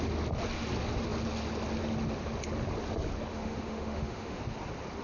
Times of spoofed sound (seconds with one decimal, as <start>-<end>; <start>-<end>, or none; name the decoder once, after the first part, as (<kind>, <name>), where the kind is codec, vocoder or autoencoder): 3.3-4.4 (autoencoder, DAC-VAE)